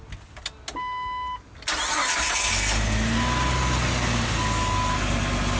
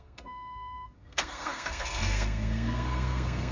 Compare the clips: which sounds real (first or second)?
first